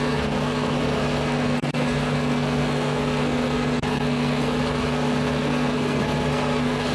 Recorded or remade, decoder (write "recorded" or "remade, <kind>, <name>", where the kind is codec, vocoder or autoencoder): remade, codec, SNAC